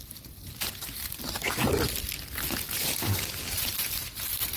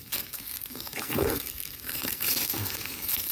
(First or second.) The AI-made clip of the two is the second